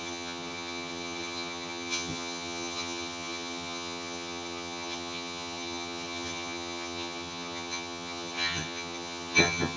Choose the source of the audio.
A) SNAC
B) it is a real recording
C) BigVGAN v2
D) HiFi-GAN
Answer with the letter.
D